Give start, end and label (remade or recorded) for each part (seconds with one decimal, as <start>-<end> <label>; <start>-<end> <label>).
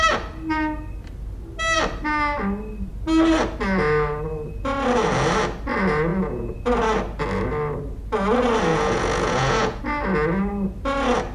0.0-6.1 recorded; 6.1-6.6 remade; 6.6-8.7 recorded; 8.7-9.8 remade; 9.8-11.3 recorded